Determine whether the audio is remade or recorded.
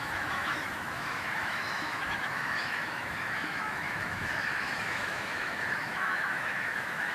remade